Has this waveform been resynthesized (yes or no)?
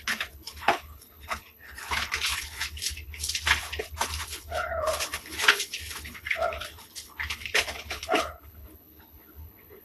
yes